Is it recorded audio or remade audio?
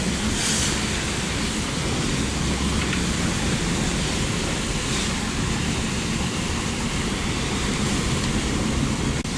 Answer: recorded